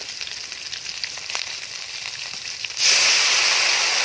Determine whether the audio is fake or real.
real